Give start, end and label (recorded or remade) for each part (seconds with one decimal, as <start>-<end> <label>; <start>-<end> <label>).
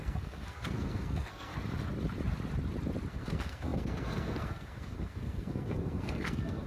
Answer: 0.0-1.5 remade; 1.5-3.1 recorded; 3.1-6.7 remade